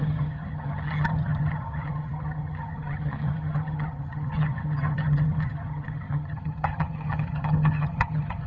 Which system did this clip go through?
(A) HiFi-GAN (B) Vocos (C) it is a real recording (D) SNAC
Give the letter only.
A